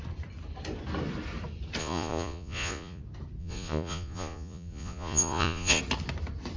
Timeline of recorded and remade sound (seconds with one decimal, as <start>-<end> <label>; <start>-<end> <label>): 0.0-1.8 recorded; 1.8-3.0 remade; 3.0-3.4 recorded; 3.4-5.8 remade; 5.8-6.6 recorded